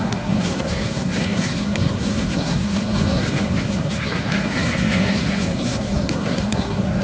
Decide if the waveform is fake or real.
fake